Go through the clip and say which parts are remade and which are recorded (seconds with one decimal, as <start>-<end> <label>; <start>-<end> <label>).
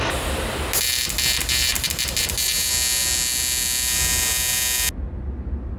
0.0-5.8 recorded